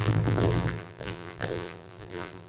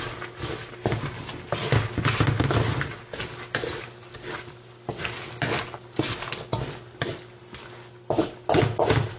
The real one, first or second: second